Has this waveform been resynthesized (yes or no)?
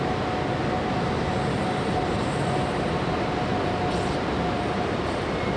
no